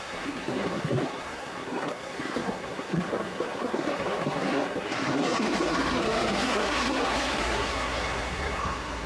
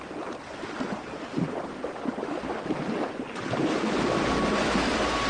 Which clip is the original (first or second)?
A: second